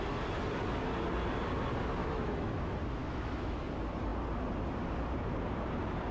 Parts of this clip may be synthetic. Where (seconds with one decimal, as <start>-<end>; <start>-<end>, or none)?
2.0-2.5; 3.0-3.6